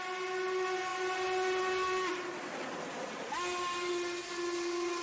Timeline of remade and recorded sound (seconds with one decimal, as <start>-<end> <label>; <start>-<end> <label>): 0.0-5.0 recorded